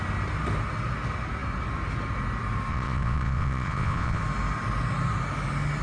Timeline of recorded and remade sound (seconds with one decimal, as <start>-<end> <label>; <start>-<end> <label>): 0.0-2.7 recorded; 2.7-4.2 remade; 4.2-5.8 recorded